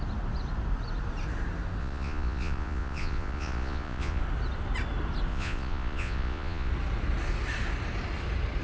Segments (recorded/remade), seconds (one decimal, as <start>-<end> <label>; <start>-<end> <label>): 0.0-1.8 recorded; 1.8-4.2 remade; 4.2-5.3 recorded; 5.3-6.7 remade; 6.7-8.6 recorded